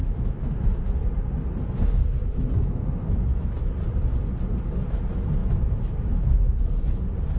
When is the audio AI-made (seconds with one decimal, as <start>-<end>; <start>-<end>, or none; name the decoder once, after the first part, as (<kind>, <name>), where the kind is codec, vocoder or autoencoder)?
0.0-0.8 (autoencoder, DAC-VAE); 2.2-3.8; 5.4-6.6